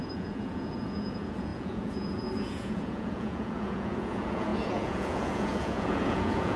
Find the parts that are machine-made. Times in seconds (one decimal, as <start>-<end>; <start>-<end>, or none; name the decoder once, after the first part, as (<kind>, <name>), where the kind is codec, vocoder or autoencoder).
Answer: 0.0-6.6 (vocoder, Vocos)